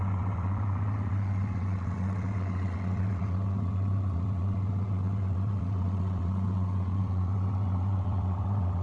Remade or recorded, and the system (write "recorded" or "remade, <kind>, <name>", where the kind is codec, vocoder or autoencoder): remade, vocoder, WaveNeXt